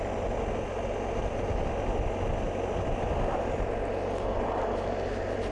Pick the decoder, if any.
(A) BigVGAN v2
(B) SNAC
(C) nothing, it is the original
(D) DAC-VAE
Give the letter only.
C